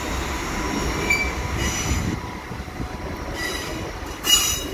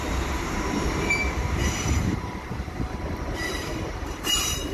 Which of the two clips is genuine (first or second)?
first